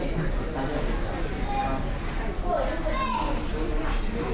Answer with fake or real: real